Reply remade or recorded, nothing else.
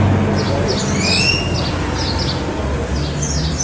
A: recorded